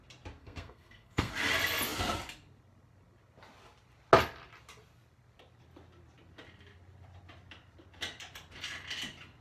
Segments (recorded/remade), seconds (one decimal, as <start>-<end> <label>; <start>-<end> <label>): 0.0-0.4 recorded; 0.4-1.3 remade; 1.3-9.4 recorded